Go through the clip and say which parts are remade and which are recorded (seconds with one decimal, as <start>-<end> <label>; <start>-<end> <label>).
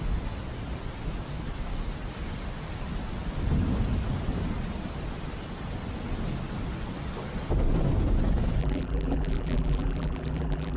0.0-8.6 recorded; 8.6-10.8 remade